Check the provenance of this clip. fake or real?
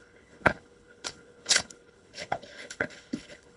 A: fake